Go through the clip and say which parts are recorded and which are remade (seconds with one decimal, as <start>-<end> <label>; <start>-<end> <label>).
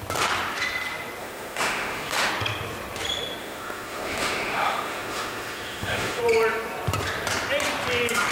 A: 0.0-1.2 recorded; 1.2-2.3 remade; 2.3-3.4 recorded; 3.4-6.2 remade; 6.2-8.3 recorded